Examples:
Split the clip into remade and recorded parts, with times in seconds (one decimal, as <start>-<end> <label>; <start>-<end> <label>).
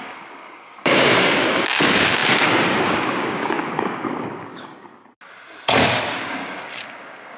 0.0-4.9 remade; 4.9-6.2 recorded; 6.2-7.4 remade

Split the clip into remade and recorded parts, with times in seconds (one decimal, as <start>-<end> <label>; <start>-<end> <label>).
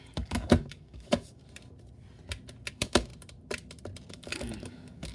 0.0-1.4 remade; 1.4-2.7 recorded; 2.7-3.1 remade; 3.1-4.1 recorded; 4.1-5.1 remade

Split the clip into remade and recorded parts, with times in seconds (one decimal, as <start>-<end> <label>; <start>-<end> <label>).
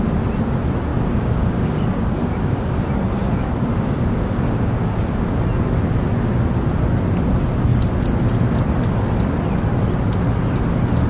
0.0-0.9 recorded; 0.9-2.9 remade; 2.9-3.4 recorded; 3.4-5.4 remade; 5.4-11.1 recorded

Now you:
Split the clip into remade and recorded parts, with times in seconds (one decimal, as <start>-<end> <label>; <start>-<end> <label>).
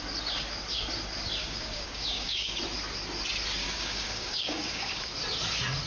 0.0-1.4 recorded; 1.4-2.6 remade; 2.6-3.6 recorded; 3.6-5.0 remade; 5.0-5.9 recorded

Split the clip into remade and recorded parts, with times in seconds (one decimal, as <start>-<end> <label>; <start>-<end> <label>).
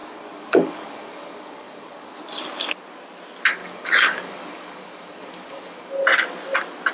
0.0-2.1 remade; 2.1-3.6 recorded; 3.6-5.9 remade; 5.9-6.9 recorded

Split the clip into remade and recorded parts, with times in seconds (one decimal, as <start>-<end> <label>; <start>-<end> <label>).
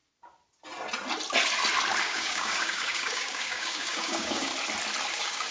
0.0-2.0 recorded; 2.0-4.5 remade; 4.5-5.1 recorded; 5.1-5.5 remade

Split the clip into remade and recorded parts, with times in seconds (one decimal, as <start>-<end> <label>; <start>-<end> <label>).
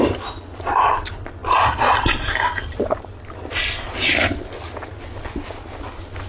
0.0-6.3 recorded